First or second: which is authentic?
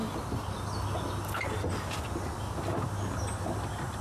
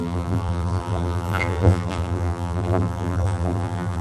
first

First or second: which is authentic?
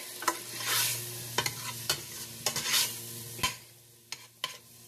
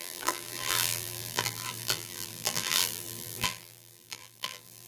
first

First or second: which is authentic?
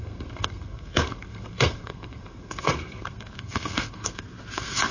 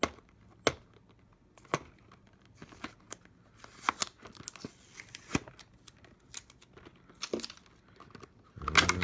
second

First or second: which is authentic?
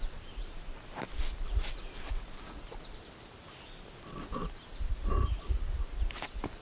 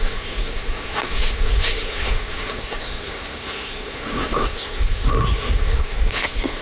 first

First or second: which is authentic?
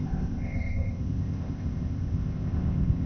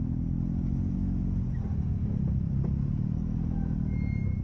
second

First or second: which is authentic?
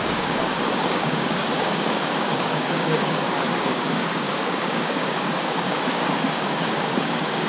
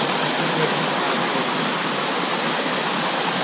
second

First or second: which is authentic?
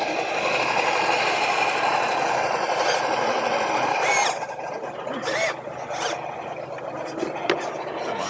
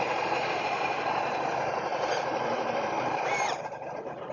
first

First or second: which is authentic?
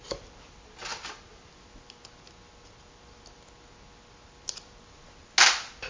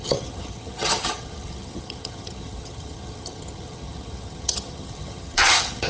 first